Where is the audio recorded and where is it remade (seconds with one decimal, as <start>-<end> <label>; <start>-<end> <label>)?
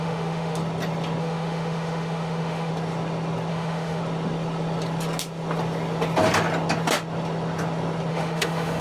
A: 0.0-0.6 remade; 0.6-1.2 recorded; 1.2-2.7 remade; 2.7-3.5 recorded; 3.5-4.0 remade; 4.0-8.1 recorded; 8.1-8.8 remade